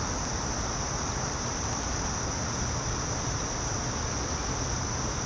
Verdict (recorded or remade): recorded